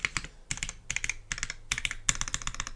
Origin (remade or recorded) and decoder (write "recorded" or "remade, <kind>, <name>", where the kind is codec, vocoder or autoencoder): recorded